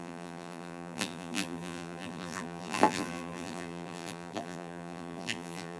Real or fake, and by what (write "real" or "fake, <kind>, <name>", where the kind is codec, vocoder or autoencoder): fake, vocoder, BigVGAN v2